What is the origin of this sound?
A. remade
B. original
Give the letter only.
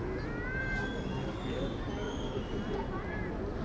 B